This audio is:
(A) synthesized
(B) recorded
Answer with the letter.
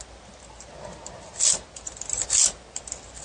B